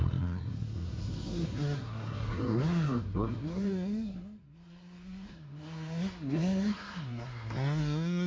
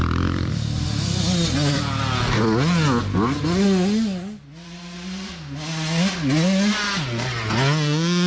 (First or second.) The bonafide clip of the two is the second